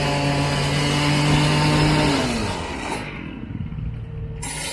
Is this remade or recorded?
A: recorded